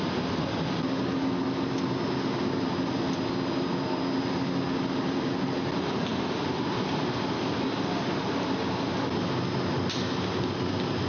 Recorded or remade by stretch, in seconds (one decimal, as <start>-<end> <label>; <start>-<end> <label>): 0.0-11.1 recorded